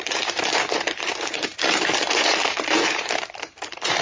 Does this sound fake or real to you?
fake